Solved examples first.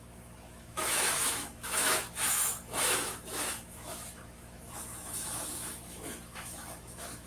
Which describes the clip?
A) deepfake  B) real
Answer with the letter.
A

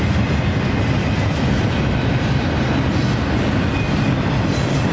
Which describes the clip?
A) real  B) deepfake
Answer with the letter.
A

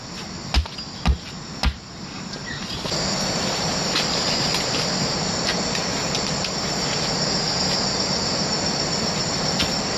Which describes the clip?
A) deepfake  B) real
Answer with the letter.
B